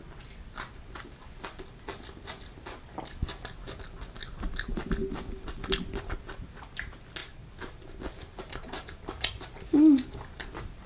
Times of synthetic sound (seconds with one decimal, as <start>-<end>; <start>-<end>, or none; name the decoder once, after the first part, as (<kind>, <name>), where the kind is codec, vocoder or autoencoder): none